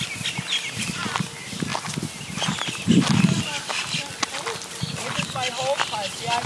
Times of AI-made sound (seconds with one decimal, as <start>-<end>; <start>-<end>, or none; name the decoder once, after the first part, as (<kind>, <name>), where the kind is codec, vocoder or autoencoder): none